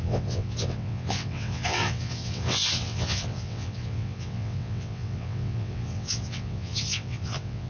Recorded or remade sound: remade